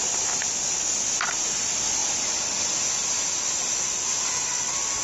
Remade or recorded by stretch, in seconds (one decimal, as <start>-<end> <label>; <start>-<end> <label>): 0.0-5.0 recorded

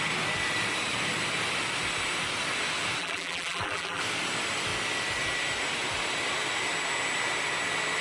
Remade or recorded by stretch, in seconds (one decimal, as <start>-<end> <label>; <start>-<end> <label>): 0.0-3.0 recorded; 3.0-4.0 remade; 4.0-8.0 recorded

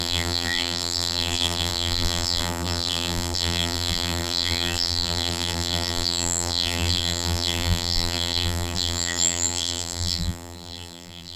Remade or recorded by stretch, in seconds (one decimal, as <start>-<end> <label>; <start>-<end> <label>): 0.0-11.4 remade

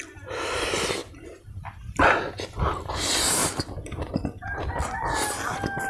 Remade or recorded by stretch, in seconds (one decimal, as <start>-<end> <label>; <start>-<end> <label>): 0.0-3.4 recorded; 3.4-4.1 remade; 4.1-5.9 recorded